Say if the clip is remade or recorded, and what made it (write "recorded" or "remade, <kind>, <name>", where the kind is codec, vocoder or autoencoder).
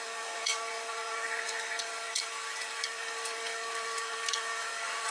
remade, codec, DAC